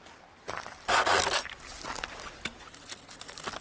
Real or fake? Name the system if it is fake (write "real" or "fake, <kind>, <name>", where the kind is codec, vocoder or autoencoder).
real